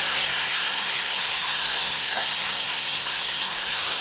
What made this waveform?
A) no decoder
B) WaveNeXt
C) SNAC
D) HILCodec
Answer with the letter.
C